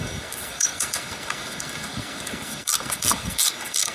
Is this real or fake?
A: fake